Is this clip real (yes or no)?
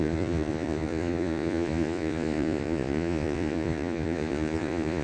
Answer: no